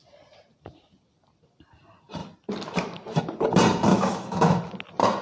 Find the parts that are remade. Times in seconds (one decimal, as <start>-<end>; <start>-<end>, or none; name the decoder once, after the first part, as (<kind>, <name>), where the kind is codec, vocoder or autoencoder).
3.9-4.6 (autoencoder, DAC-VAE)